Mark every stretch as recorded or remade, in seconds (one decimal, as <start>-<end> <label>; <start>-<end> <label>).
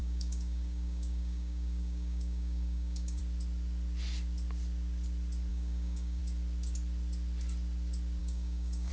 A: 0.0-3.2 remade; 3.2-5.5 recorded; 5.5-6.2 remade; 6.2-8.2 recorded; 8.2-8.9 remade